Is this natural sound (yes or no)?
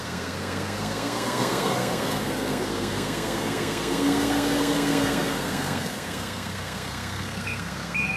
no